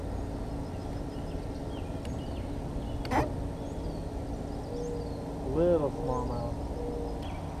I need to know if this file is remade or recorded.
recorded